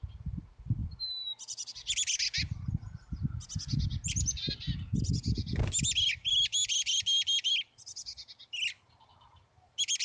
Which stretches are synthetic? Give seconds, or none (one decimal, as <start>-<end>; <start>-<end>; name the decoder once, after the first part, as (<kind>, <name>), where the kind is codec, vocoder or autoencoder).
none

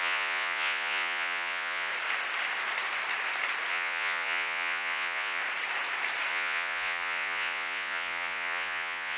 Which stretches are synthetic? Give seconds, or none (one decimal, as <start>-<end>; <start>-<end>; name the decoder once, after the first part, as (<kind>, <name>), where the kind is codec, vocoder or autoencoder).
0.0-1.9 (vocoder, Vocos); 3.7-5.4; 6.3-9.2

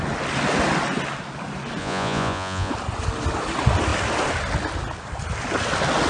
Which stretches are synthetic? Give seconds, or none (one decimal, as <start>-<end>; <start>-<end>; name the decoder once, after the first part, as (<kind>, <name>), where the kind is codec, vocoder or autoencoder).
1.8-2.7 (vocoder, Vocos)

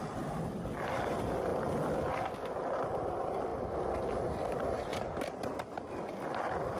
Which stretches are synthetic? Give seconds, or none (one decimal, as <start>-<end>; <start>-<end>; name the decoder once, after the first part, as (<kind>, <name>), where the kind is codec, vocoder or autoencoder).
none

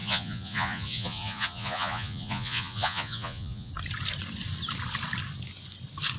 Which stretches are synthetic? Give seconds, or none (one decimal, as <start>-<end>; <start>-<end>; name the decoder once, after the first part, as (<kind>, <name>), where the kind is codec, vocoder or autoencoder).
0.0-3.7 (vocoder, Vocos)

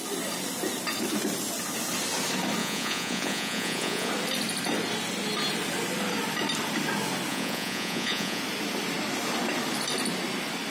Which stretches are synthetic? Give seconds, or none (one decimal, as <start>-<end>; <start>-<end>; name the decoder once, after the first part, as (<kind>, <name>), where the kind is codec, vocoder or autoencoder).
2.6-4.1 (vocoder, Vocos); 7.3-8.4

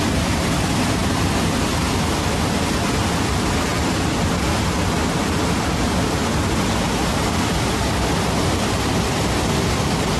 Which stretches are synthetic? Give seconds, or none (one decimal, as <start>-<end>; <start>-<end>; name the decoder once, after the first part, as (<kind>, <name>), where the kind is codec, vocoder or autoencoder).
none

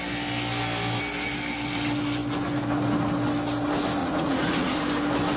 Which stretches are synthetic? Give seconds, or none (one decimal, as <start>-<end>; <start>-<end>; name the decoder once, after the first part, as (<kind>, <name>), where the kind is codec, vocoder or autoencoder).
4.0-4.8 (vocoder, Vocos)